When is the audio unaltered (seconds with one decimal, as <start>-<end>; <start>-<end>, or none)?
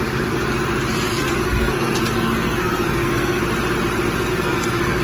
0.0-1.1; 3.4-4.3